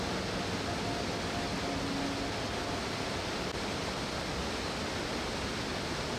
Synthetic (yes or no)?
no